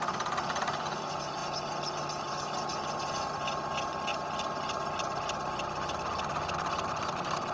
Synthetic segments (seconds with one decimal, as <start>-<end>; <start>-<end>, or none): none

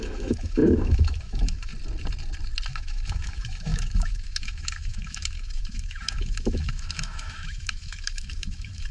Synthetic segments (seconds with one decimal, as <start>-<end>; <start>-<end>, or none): 0.0-1.7; 2.7-8.9

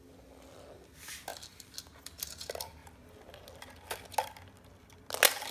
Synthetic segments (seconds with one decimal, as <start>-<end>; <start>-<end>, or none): none

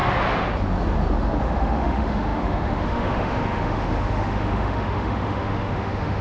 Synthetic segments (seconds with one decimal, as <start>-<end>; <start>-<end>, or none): 1.4-6.2

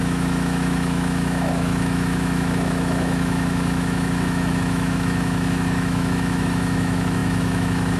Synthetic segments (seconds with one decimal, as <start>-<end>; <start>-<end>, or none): 0.0-8.0